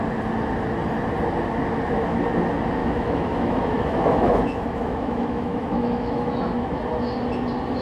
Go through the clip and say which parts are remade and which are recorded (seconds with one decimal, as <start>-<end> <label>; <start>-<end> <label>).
0.0-2.8 recorded; 2.8-6.8 remade; 6.8-7.8 recorded